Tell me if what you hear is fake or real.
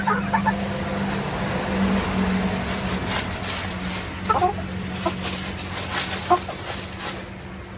real